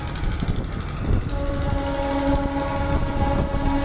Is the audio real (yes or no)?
yes